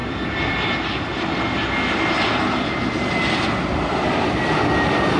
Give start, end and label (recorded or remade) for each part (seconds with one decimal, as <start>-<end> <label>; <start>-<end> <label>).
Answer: 0.0-5.2 recorded